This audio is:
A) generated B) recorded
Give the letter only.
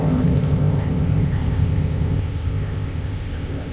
A